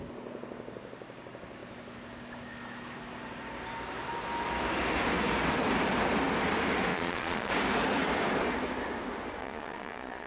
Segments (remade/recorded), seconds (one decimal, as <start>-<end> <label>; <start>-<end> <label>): 0.0-6.9 recorded; 6.9-7.5 remade; 7.5-9.4 recorded; 9.4-10.3 remade